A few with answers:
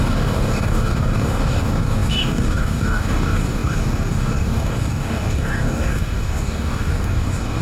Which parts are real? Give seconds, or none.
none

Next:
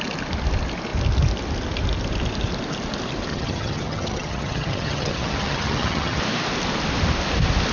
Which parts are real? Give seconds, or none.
0.0-3.3; 6.2-7.7

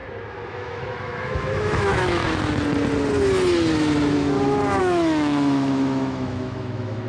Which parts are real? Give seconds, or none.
0.0-0.5; 2.2-4.8

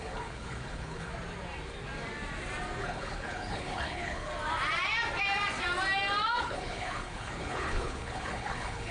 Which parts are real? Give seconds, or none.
1.1-2.8; 4.3-6.4

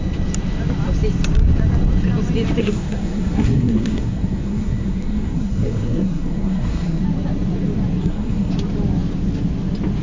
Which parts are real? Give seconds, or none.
0.0-2.6; 7.0-8.0; 8.5-10.0

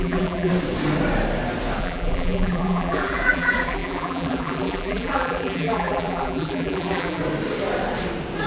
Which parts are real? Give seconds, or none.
0.5-1.8; 7.2-8.5

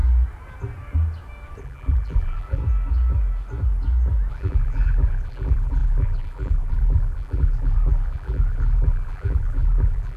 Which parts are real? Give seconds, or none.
0.0-1.6; 2.6-4.3

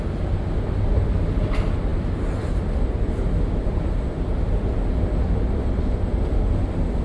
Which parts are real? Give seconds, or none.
0.0-7.0